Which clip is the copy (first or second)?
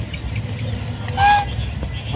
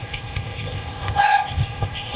second